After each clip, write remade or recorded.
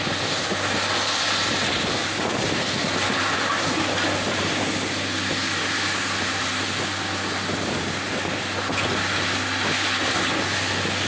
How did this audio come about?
recorded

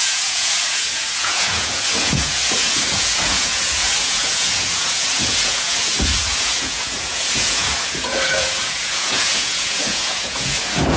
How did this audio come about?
remade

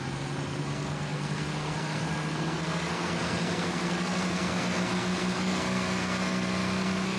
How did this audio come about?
remade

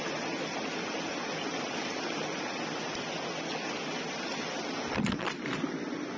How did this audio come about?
recorded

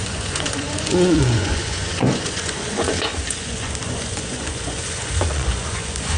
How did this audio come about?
remade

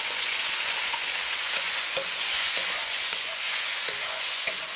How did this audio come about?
remade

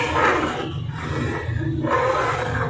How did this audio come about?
recorded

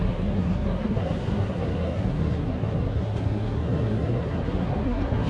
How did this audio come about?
remade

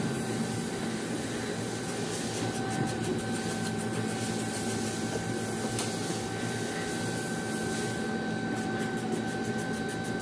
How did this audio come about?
recorded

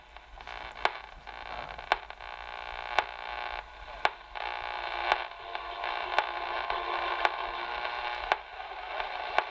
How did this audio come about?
recorded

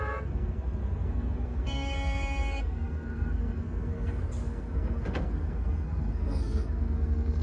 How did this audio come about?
remade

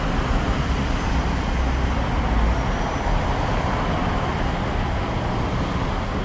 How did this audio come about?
recorded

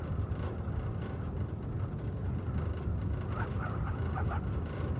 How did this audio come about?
recorded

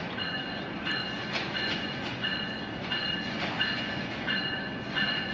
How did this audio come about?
remade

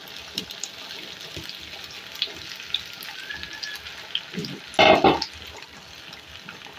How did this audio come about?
recorded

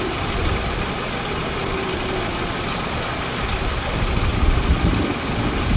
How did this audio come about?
recorded